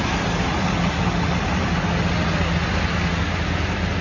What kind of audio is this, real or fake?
real